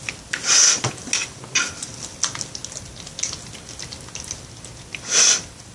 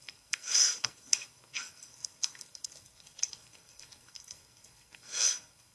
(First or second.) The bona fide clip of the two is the first